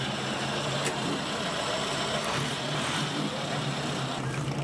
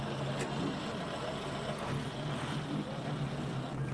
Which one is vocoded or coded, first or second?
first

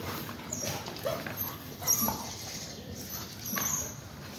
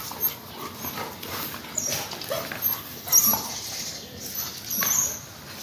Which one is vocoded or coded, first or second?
first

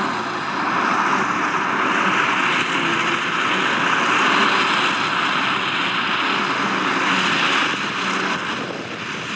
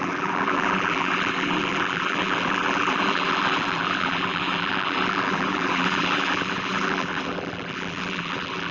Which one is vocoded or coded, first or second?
second